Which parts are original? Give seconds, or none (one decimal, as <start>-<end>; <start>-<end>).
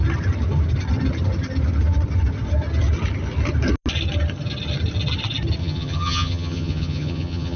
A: 0.0-5.6